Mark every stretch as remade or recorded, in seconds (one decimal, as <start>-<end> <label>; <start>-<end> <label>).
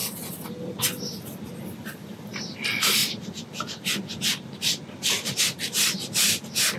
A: 0.0-6.8 recorded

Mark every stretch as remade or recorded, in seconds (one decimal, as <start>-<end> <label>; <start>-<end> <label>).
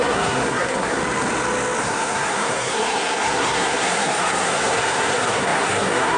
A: 0.0-1.0 remade; 1.0-1.8 recorded; 1.8-6.2 remade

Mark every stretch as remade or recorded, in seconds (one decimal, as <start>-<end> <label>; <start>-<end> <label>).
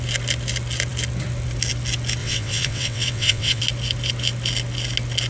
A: 0.0-2.2 recorded; 2.2-3.6 remade; 3.6-5.3 recorded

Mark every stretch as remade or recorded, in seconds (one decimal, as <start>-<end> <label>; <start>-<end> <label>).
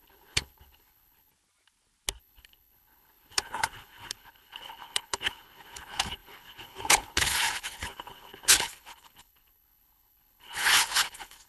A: 0.0-1.3 remade; 1.3-2.2 recorded; 2.2-11.5 remade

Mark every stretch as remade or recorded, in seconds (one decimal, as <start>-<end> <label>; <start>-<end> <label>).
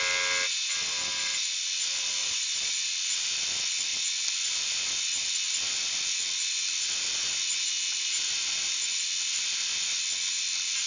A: 0.0-2.2 recorded; 2.2-2.7 remade; 2.7-10.9 recorded